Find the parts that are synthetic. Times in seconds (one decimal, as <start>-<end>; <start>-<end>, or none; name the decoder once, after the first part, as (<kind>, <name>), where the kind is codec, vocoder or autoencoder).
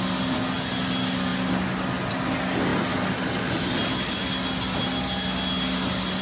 none